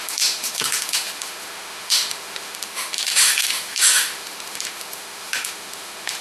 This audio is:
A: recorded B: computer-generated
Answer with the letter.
B